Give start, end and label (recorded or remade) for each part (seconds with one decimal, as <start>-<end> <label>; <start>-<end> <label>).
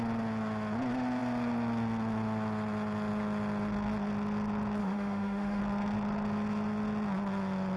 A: 0.0-4.8 recorded; 4.8-5.6 remade; 5.6-7.8 recorded